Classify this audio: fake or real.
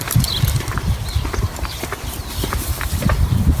fake